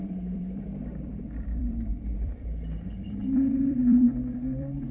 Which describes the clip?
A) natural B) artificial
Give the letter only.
B